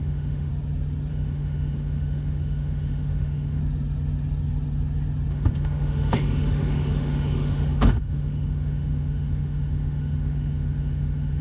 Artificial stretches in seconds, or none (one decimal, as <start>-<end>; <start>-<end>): 0.0-0.5; 1.1-3.6; 5.3-11.4